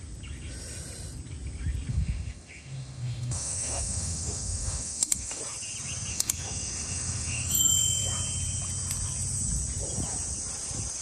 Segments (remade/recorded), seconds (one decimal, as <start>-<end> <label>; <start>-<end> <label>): 0.0-1.9 recorded; 1.9-5.4 remade; 5.4-6.1 recorded; 6.1-7.7 remade; 7.7-11.0 recorded